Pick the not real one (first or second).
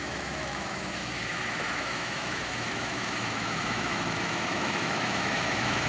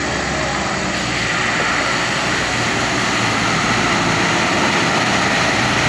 first